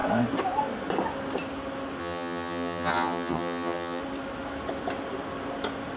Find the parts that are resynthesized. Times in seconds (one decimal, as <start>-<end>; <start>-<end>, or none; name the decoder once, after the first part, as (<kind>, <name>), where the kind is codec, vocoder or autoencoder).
2.0-4.0 (vocoder, HiFi-GAN)